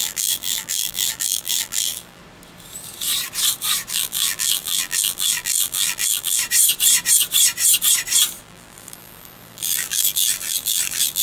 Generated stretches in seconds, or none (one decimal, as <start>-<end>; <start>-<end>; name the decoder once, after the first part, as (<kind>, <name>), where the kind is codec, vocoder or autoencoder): 0.0-2.2 (vocoder, BigVGAN v2); 3.9-6.4; 8.4-11.2

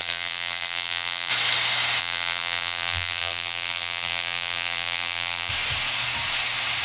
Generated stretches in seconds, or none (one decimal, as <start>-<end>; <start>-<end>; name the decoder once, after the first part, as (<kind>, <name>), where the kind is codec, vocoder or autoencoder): 0.0-1.3 (vocoder, BigVGAN v2); 2.0-5.5